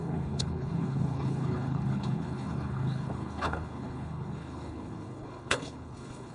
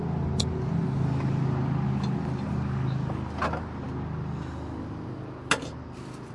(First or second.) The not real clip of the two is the first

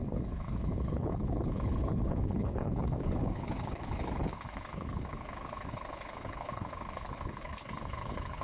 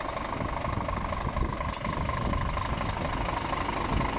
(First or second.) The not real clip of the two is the first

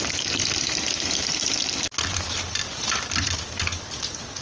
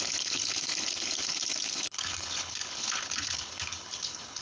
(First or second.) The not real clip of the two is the second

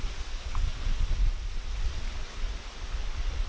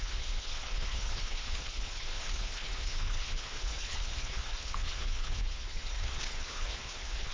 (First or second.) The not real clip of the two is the second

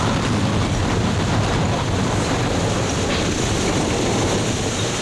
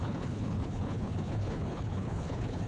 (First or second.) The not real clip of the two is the second